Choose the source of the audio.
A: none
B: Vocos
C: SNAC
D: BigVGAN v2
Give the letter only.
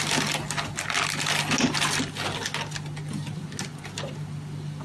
A